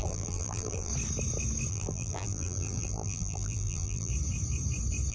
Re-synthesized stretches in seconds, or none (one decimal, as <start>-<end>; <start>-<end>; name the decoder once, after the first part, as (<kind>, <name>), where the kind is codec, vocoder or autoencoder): 0.0-0.9 (vocoder, BigVGAN v2); 1.7-4.1